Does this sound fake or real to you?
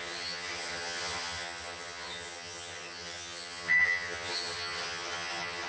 fake